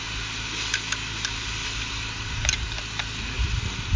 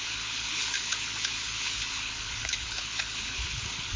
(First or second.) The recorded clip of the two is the first